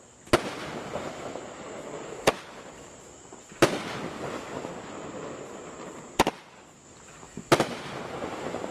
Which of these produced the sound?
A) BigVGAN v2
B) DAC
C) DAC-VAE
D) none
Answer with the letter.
D